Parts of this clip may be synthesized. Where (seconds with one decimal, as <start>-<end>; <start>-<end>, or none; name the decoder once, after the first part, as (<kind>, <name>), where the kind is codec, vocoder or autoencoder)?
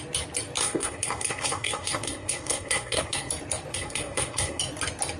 0.6-3.3 (codec, SNAC); 3.7-4.6